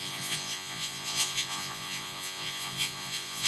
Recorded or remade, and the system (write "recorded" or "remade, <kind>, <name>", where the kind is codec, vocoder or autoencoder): remade, vocoder, Vocos